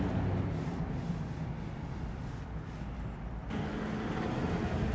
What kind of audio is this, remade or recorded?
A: recorded